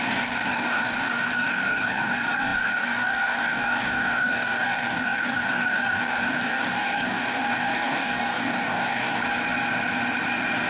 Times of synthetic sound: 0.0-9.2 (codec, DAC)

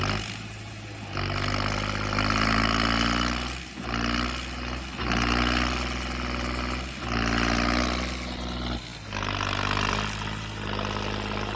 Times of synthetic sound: none

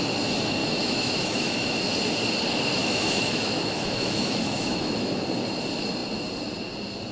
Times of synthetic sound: 0.6-1.9 (autoencoder, DAC-VAE); 2.8-5.2

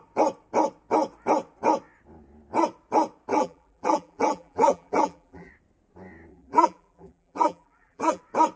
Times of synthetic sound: 3.3-5.5 (vocoder, BigVGAN v2); 6.3-8.2